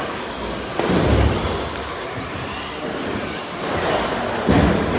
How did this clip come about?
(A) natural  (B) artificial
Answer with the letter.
A